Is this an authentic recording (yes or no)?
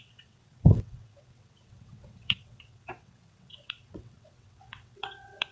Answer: no